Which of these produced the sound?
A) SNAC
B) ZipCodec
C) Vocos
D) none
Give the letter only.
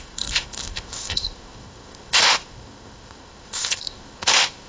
B